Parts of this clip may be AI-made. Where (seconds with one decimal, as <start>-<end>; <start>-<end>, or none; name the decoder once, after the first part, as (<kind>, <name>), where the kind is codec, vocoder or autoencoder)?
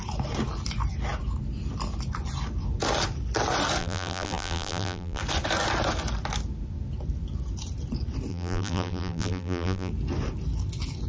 3.8-5.2 (vocoder, BigVGAN v2); 8.3-9.9